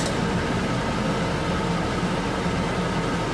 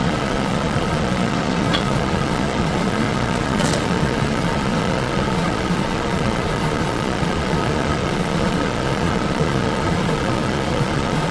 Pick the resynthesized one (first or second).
second